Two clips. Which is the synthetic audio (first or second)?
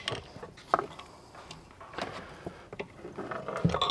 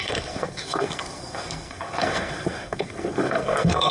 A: second